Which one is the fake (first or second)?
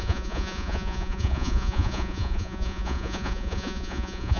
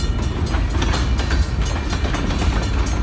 first